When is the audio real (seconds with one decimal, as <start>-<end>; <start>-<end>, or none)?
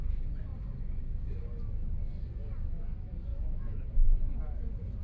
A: 0.0-3.3; 3.9-5.0